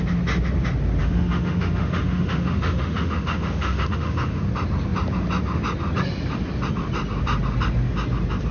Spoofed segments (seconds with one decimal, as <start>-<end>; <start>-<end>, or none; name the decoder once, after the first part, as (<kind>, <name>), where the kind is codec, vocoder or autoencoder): 1.0-4.4 (autoencoder, DAC-VAE)